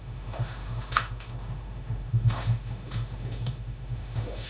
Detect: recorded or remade remade